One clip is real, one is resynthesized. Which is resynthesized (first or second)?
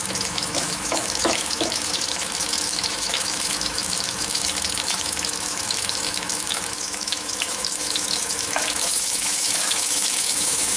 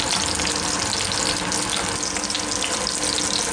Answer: first